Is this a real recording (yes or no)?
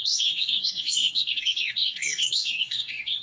no